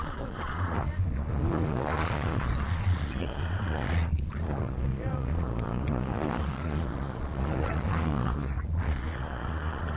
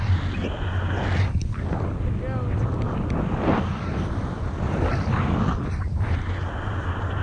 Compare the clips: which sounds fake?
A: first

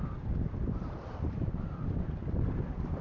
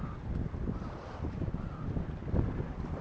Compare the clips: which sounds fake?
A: first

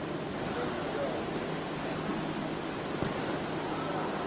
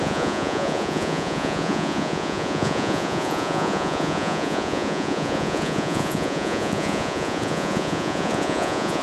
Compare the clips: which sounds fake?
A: second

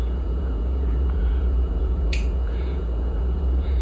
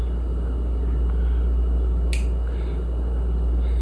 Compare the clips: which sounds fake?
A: first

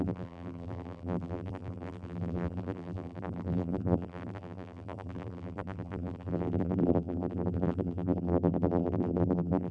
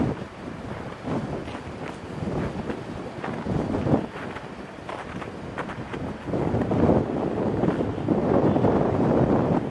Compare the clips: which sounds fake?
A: first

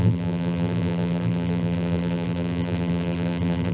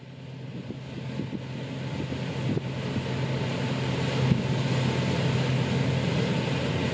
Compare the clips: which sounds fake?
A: first